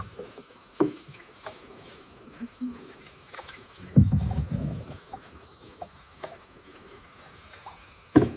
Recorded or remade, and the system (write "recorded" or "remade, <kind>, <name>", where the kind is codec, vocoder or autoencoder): remade, autoencoder, DAC-VAE